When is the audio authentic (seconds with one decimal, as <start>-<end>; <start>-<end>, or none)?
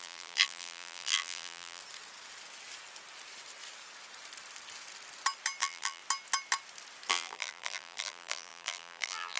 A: 1.8-5.6; 6.0-7.1